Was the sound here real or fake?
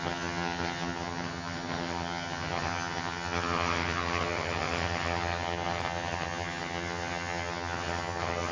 fake